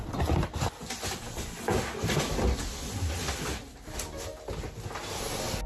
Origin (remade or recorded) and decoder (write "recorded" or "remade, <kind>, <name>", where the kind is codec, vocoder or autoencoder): recorded